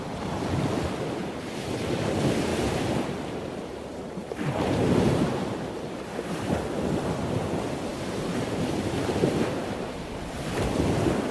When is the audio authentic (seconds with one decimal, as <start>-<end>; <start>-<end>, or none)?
0.0-1.2; 1.9-2.5; 6.5-7.9; 10.0-11.3